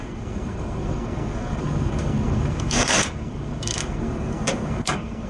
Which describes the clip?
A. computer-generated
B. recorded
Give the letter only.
A